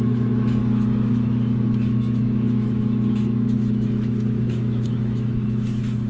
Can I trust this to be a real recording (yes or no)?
no